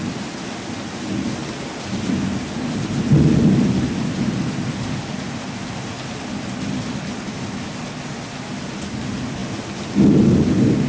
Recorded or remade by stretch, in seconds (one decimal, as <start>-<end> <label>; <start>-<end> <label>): 0.0-10.9 recorded